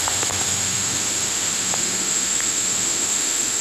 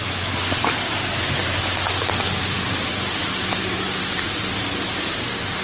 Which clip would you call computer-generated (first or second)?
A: first